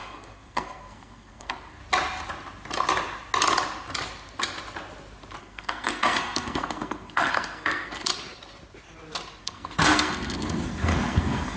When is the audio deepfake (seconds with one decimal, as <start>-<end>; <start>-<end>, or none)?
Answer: 0.0-1.8; 5.4-8.1; 9.4-11.6